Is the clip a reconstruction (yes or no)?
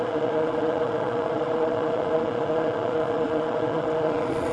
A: yes